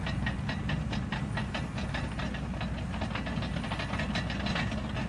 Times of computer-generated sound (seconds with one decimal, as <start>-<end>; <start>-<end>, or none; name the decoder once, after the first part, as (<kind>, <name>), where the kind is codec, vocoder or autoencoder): none